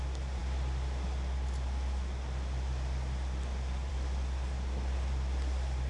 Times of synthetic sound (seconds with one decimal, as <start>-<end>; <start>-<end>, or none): none